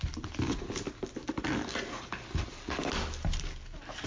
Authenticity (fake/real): real